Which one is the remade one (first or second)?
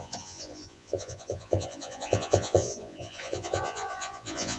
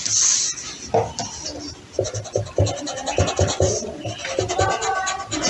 first